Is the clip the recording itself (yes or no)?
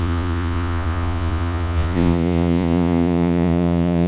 no